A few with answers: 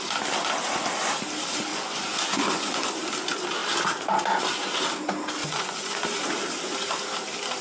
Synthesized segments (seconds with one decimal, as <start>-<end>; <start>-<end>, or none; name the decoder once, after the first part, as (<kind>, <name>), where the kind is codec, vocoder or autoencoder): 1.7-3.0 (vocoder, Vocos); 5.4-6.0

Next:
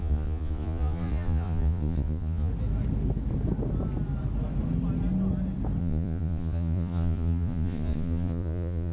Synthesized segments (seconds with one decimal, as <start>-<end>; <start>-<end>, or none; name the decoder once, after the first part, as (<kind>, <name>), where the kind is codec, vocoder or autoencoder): 0.0-2.5 (vocoder, Vocos); 5.8-8.9

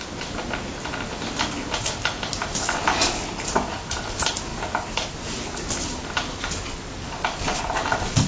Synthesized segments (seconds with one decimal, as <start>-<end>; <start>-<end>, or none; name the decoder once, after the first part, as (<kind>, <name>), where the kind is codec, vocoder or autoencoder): none